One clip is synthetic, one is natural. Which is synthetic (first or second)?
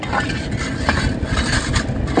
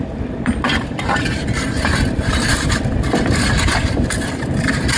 second